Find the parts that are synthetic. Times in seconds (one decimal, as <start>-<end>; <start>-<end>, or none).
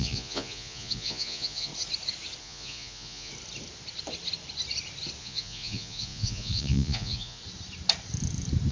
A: 0.0-1.7; 2.4-3.3; 5.2-7.4